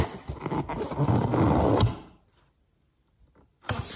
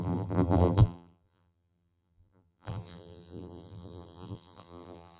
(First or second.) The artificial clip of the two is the second